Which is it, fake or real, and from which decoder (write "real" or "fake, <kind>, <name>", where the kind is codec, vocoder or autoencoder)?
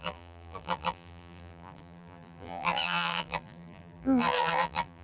fake, vocoder, BigVGAN v2